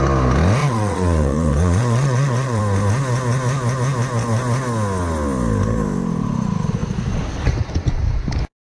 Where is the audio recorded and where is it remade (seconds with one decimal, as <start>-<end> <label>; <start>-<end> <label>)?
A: 0.0-0.6 recorded; 0.6-2.6 remade; 2.6-8.7 recorded